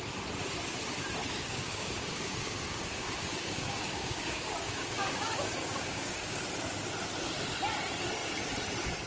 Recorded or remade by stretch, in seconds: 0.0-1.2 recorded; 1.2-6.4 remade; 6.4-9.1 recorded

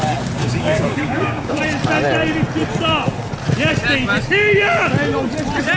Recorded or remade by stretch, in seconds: 0.0-0.4 recorded; 0.4-1.6 remade; 1.6-5.8 recorded

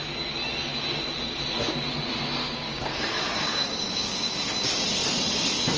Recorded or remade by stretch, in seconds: 0.0-2.4 recorded; 2.4-4.3 remade; 4.3-5.8 recorded

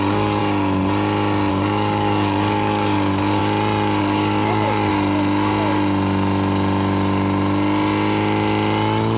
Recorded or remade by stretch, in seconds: 0.0-0.4 remade; 0.4-1.5 recorded; 1.5-3.4 remade; 3.4-4.0 recorded; 4.0-4.9 remade; 4.9-9.2 recorded

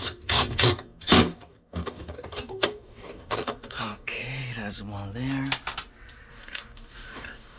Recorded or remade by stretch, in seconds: 0.0-4.2 remade; 4.2-6.3 recorded; 6.3-7.6 remade

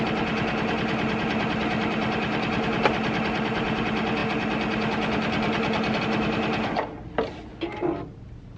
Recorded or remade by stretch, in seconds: 0.0-8.6 recorded

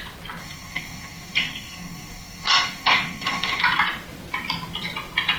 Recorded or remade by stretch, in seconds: 0.0-0.4 recorded; 0.4-3.6 remade; 3.6-5.4 recorded